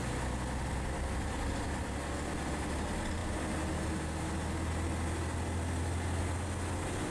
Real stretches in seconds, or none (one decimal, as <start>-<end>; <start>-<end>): 0.0-7.1

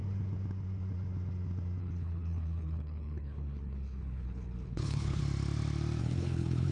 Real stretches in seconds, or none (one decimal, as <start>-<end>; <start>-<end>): 0.0-1.8; 5.2-6.0

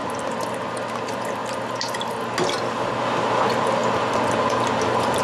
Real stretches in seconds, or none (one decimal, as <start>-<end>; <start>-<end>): 0.0-5.2

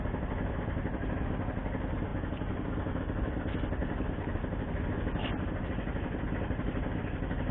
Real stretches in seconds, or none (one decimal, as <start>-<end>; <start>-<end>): 0.0-3.8; 4.3-7.5

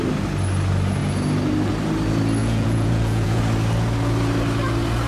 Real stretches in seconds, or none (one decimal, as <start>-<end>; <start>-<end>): 0.0-2.4; 3.4-5.1

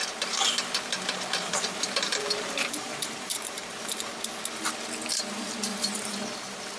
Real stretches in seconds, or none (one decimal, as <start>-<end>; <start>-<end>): 0.0-1.5; 4.1-5.2

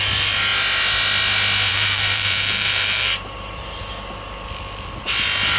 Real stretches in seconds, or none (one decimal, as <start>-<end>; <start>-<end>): 0.0-1.7; 3.8-5.6

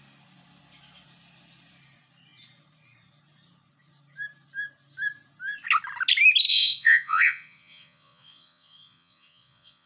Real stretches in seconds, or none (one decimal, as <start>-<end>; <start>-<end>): 0.0-6.5